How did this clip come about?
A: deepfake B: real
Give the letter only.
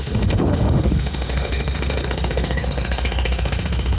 A